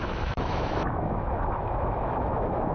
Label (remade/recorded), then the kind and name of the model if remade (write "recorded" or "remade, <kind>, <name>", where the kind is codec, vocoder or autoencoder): remade, autoencoder, DAC-VAE